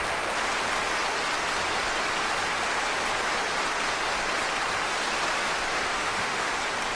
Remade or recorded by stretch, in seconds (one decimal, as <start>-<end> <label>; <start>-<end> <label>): 0.0-5.7 recorded; 5.7-6.5 remade; 6.5-7.0 recorded